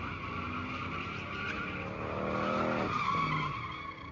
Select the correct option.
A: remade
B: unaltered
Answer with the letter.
B